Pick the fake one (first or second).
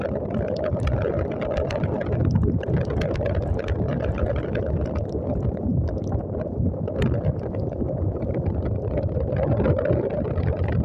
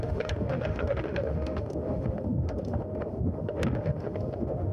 second